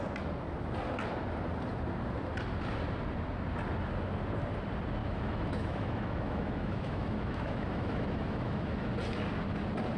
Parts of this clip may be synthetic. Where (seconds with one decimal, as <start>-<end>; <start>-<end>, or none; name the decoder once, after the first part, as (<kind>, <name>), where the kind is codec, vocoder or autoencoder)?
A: 5.0-8.9 (autoencoder, DAC-VAE)